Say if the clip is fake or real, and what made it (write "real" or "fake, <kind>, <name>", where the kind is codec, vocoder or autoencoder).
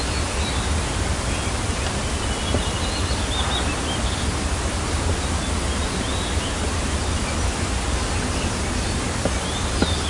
real